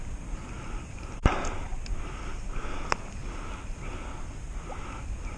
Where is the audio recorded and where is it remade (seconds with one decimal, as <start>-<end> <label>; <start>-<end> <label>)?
0.0-5.4 recorded